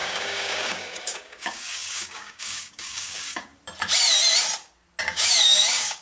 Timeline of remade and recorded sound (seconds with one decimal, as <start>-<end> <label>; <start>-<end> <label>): 0.0-3.5 remade; 3.5-5.0 recorded; 5.0-6.0 remade